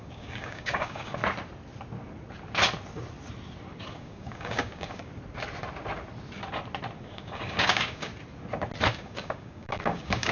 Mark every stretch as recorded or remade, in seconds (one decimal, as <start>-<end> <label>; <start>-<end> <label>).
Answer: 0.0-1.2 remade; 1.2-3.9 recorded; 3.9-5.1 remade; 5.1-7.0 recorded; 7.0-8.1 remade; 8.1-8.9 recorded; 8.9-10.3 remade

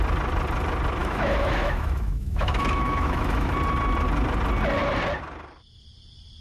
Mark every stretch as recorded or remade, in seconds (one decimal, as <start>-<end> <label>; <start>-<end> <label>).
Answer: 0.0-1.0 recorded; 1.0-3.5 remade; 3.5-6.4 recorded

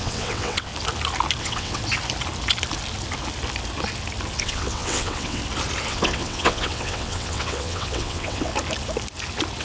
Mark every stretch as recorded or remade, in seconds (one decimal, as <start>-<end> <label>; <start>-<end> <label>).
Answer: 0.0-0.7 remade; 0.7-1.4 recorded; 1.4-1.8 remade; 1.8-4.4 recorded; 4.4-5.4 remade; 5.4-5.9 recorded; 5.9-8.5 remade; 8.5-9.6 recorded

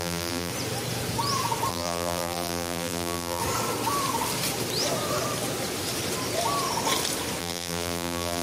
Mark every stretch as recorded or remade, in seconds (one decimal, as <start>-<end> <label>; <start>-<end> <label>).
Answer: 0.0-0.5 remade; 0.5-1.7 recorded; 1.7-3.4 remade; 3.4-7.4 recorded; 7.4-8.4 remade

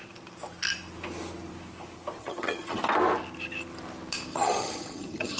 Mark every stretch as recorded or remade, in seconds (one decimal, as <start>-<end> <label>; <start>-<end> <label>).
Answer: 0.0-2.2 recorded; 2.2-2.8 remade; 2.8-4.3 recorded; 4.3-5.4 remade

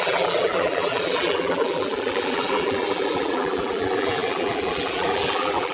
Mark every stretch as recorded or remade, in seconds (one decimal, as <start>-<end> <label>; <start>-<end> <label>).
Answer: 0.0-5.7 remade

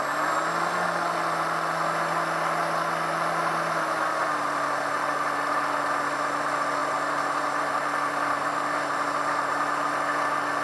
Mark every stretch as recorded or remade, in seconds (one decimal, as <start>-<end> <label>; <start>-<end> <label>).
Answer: 0.0-10.6 recorded